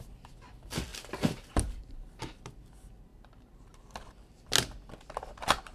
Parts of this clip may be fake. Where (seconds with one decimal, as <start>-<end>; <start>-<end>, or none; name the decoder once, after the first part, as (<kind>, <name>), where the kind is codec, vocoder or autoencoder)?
0.9-2.5 (vocoder, BigVGAN v2); 3.1-4.3